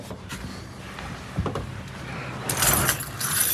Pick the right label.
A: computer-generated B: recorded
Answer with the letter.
B